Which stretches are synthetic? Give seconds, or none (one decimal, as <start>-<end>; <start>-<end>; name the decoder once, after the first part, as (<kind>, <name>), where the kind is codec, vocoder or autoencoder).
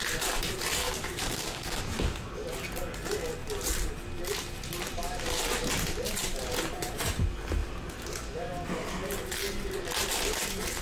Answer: 0.8-1.8 (codec, DAC)